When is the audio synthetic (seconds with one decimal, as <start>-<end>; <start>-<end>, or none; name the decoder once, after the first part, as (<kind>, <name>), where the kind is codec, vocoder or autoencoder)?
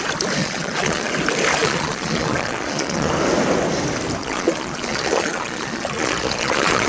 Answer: 0.4-1.1 (vocoder, Vocos); 1.6-3.1; 4.2-6.9